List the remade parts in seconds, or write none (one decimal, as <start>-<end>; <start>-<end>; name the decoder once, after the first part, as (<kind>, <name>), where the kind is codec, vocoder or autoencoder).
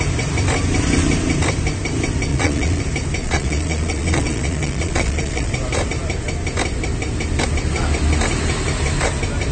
2.3-2.8 (vocoder, Vocos); 3.2-5.5